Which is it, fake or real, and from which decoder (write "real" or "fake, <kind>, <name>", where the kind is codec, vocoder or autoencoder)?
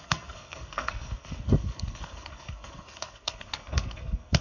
fake, codec, SNAC